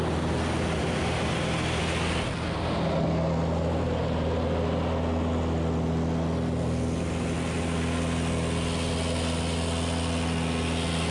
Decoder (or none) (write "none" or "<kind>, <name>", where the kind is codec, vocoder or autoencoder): none